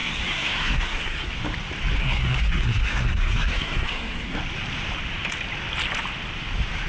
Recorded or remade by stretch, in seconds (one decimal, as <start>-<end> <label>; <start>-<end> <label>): 0.0-1.3 remade; 1.3-2.0 recorded; 2.0-4.4 remade; 4.4-6.9 recorded